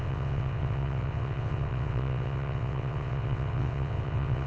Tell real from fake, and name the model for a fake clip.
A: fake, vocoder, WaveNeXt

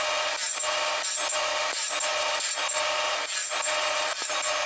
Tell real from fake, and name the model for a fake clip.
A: real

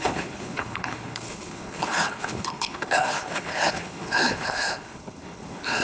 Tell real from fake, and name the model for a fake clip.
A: fake, codec, HILCodec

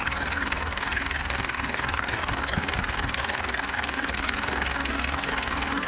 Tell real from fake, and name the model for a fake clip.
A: fake, codec, DAC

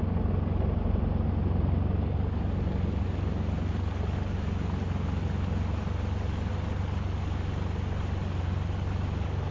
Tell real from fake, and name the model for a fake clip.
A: real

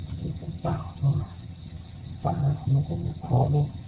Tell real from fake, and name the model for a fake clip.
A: fake, vocoder, HiFi-GAN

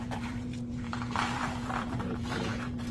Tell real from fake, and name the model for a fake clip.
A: fake, vocoder, BigVGAN v2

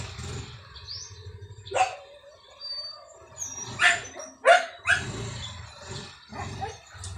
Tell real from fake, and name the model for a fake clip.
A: real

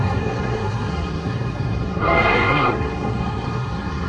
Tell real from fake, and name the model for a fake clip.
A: fake, codec, SNAC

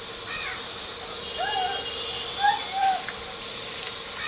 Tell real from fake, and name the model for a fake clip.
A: real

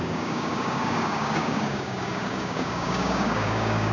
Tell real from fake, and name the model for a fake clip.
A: fake, codec, DAC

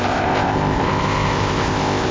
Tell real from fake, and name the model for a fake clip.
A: fake, codec, ZipCodec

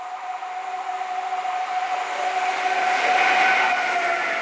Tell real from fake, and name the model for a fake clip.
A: real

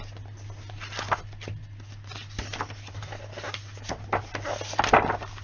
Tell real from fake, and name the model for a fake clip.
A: real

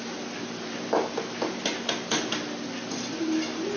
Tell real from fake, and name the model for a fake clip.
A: fake, vocoder, BigVGAN v2